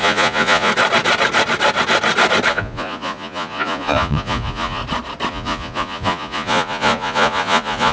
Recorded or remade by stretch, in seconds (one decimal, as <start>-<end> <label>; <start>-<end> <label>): 0.0-0.7 remade; 0.7-2.5 recorded; 2.5-4.8 remade; 4.8-5.3 recorded; 5.3-7.9 remade